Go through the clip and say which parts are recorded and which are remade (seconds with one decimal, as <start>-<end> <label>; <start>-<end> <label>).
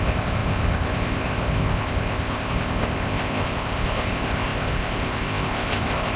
0.0-6.2 remade